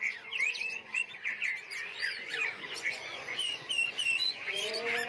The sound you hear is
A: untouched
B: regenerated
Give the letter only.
B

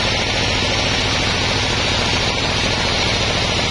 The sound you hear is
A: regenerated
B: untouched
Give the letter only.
B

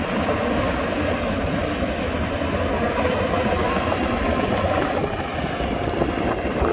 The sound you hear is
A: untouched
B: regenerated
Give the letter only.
A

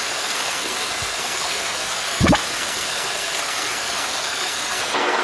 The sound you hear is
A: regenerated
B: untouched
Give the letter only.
A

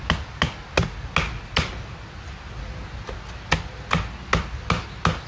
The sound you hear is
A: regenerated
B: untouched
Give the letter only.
B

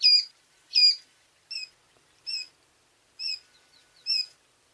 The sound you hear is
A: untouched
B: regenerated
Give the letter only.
A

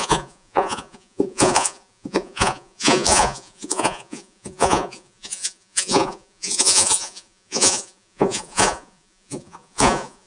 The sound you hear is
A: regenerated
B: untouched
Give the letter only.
A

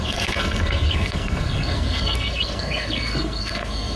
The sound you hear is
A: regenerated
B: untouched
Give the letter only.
A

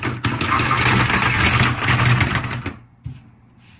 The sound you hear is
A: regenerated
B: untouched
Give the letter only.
B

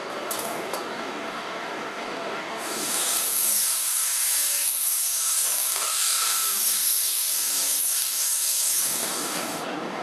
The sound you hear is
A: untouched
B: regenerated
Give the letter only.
B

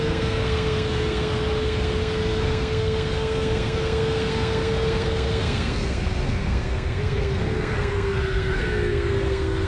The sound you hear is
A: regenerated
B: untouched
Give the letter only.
A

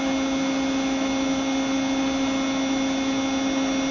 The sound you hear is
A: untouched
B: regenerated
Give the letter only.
A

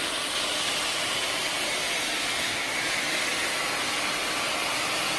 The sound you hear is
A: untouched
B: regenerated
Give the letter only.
A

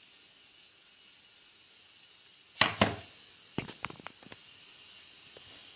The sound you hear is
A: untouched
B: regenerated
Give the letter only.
A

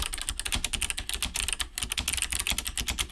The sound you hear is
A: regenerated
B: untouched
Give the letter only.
B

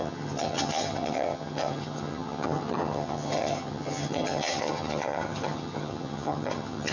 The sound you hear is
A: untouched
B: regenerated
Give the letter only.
B